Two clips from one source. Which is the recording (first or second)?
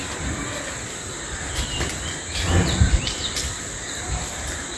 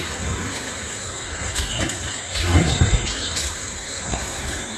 first